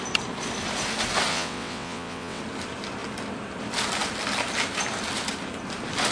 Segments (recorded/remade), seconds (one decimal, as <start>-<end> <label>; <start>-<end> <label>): 0.0-1.3 recorded; 1.3-2.4 remade; 2.4-6.1 recorded